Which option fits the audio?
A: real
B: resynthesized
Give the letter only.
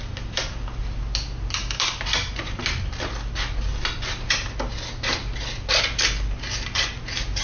A